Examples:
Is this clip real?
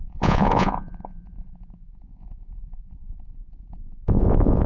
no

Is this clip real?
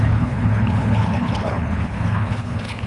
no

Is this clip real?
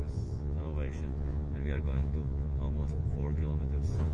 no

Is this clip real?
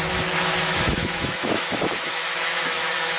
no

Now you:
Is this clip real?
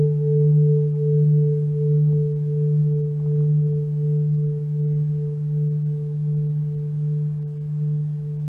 no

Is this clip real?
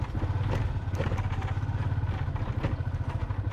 yes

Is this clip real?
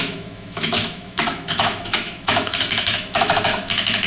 no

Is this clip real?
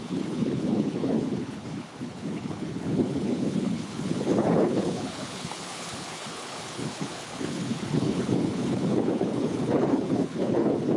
no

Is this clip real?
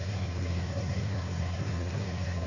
no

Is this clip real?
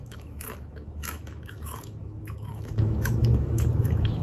no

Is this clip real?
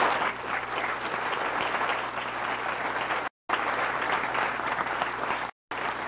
yes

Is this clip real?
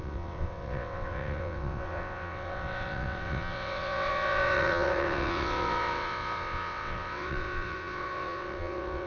no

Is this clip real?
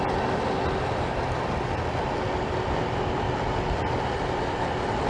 yes